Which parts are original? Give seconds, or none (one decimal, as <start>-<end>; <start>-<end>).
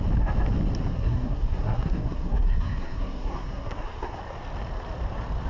0.0-0.9; 4.2-5.5